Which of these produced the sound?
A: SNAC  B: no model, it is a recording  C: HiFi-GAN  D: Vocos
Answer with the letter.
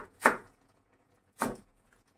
D